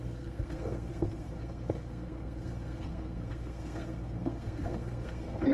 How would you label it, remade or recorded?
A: remade